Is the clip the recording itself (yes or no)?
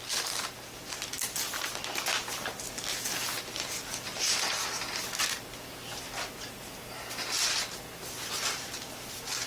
yes